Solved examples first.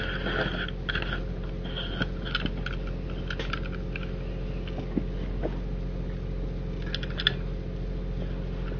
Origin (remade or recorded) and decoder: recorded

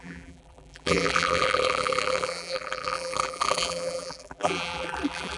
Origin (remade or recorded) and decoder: remade, vocoder, BigVGAN v2